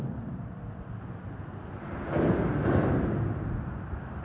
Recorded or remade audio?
recorded